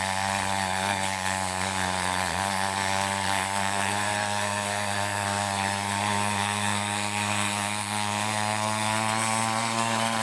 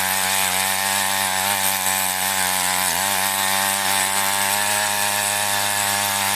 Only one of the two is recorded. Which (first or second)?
second